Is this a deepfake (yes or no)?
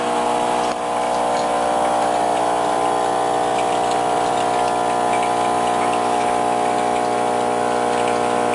no